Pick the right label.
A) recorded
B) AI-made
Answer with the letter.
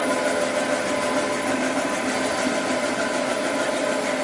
A